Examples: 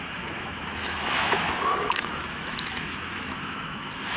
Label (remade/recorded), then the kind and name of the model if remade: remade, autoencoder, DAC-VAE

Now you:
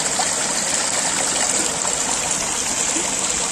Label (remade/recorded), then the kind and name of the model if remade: recorded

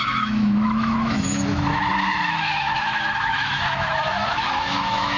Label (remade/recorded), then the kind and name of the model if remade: remade, autoencoder, DAC-VAE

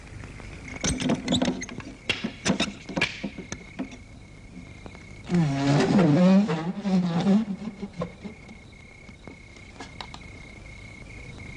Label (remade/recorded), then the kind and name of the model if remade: recorded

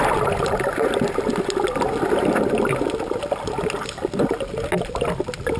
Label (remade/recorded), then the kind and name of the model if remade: recorded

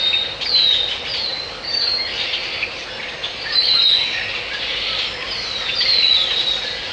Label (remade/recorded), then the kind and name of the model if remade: recorded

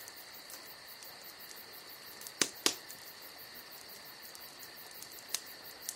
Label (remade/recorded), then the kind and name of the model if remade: recorded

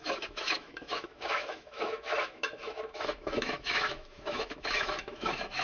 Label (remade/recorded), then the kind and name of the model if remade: remade, autoencoder, DAC-VAE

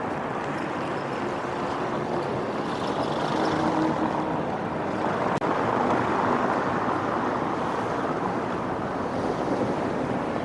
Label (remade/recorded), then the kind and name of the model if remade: recorded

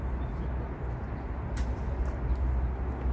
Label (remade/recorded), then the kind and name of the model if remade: recorded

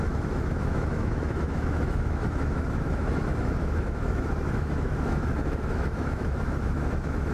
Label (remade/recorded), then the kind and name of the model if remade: remade, autoencoder, DAC-VAE